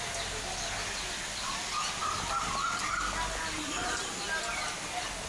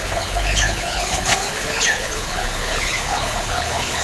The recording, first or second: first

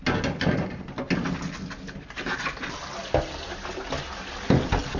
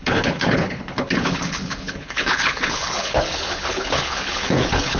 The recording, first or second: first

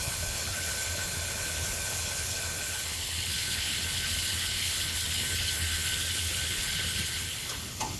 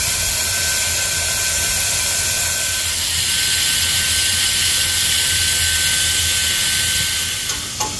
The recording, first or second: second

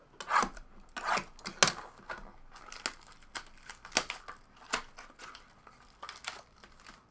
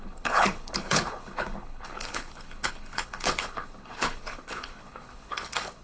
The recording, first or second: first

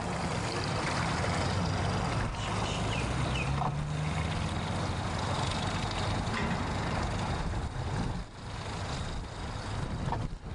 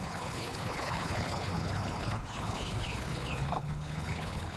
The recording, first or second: first